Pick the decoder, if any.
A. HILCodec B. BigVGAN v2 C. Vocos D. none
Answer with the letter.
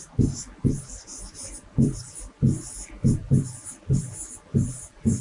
D